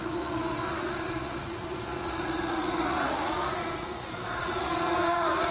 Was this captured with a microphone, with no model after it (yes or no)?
no